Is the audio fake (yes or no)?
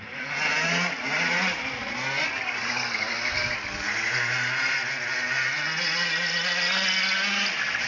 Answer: no